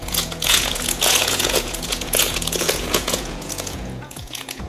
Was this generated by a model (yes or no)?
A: yes